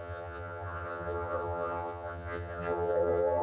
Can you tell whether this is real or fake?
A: fake